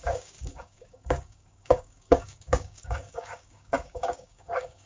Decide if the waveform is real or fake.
fake